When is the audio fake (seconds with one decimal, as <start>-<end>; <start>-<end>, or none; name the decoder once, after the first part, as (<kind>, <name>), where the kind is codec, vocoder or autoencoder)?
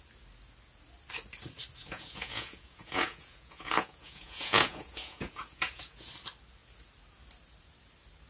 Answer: 1.8-6.1 (vocoder, Vocos)